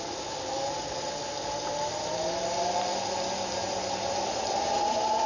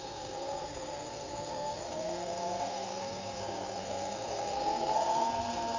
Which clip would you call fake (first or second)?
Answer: second